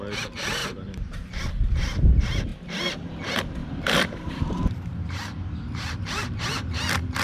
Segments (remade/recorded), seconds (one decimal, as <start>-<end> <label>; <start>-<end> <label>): 0.0-0.6 recorded; 0.6-1.4 remade; 1.4-3.6 recorded; 3.6-6.8 remade; 6.8-7.2 recorded